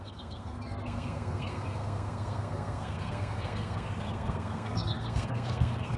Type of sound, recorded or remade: remade